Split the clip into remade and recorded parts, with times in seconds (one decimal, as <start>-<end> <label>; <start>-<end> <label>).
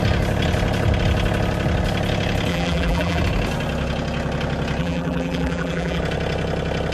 0.0-2.5 recorded; 2.5-3.2 remade; 3.2-4.8 recorded; 4.8-6.0 remade; 6.0-6.9 recorded